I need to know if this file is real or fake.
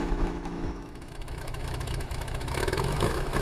fake